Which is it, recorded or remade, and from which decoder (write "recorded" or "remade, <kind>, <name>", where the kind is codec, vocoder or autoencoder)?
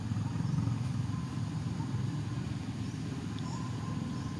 recorded